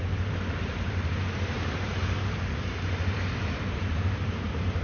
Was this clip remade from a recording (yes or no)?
yes